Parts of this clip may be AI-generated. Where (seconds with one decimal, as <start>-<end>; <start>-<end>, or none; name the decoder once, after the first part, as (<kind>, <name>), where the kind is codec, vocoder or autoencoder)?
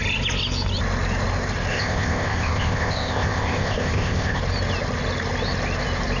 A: 1.7-4.4 (codec, ZipCodec)